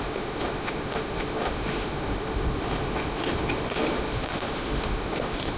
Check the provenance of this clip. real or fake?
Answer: fake